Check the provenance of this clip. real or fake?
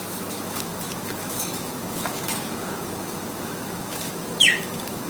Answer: fake